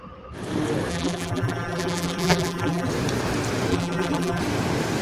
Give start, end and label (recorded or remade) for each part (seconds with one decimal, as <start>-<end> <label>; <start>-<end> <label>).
0.0-0.9 recorded; 0.9-2.9 remade; 2.9-3.7 recorded; 3.7-4.4 remade; 4.4-5.0 recorded

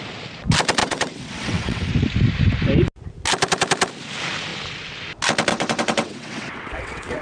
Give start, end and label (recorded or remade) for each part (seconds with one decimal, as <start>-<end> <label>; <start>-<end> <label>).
0.0-0.8 recorded; 0.8-1.9 remade; 1.9-5.5 recorded; 5.5-7.2 remade

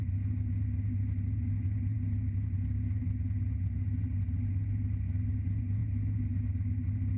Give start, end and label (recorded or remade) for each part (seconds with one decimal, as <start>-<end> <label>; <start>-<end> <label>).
0.0-7.2 recorded